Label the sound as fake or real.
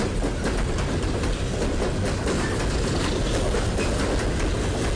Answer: real